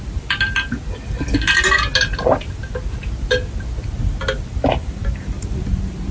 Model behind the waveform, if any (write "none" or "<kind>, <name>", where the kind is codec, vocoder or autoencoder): none